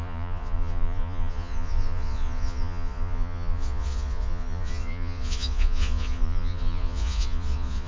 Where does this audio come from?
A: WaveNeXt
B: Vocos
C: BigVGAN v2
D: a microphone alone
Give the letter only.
B